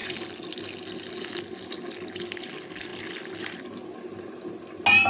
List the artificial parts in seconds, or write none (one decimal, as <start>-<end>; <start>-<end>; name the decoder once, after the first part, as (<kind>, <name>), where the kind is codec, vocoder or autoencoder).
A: none